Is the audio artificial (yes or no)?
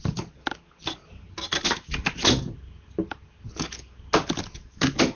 no